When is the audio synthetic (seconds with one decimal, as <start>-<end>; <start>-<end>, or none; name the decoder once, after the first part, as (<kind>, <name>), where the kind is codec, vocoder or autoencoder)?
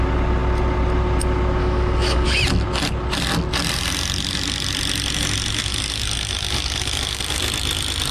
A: 1.6-2.4 (codec, DAC); 5.6-7.4